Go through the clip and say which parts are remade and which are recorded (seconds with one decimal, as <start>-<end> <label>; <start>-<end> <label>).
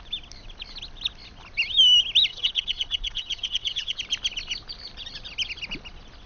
0.0-2.3 recorded; 2.3-4.0 remade; 4.0-6.3 recorded